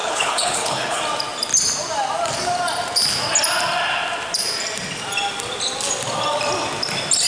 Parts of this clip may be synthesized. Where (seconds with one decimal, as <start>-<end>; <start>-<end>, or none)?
0.0-1.0